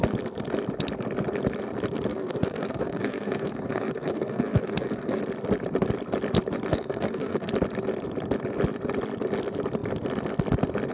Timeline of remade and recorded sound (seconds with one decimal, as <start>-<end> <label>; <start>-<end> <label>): 0.0-2.1 recorded; 2.1-5.2 remade; 5.2-6.7 recorded; 6.7-7.5 remade; 7.5-10.9 recorded